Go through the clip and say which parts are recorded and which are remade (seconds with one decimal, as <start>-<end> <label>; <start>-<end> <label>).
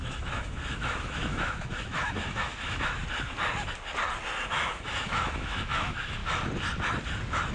0.0-3.0 remade; 3.0-4.5 recorded; 4.5-6.2 remade; 6.2-7.5 recorded